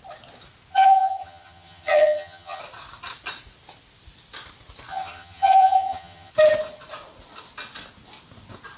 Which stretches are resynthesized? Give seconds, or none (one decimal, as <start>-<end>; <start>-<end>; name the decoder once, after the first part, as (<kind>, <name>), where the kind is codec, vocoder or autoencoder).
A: 0.7-2.6 (vocoder, HiFi-GAN); 4.9-6.3